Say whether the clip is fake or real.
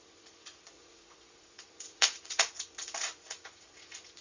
fake